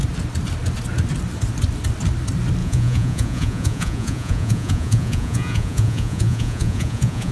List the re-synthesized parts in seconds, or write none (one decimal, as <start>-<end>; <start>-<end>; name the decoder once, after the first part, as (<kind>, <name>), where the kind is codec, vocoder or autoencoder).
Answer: 2.6-7.3 (vocoder, Vocos)